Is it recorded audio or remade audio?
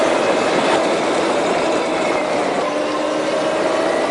remade